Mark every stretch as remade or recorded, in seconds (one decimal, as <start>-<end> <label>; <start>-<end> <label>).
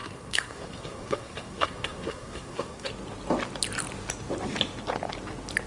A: 0.0-2.9 remade; 2.9-5.7 recorded